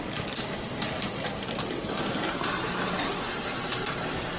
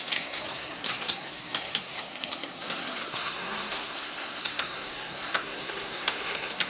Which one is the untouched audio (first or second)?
first